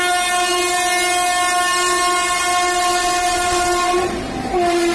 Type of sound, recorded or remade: recorded